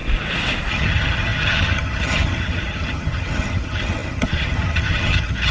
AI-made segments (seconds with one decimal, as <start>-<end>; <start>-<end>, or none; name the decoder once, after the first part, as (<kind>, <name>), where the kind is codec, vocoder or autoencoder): 0.7-5.5 (vocoder, HiFi-GAN)